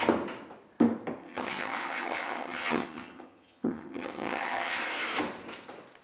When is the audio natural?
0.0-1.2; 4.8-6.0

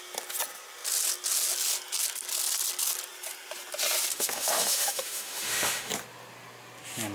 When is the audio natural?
0.0-4.1; 5.9-7.1

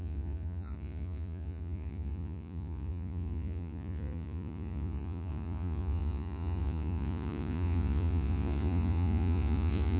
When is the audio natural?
none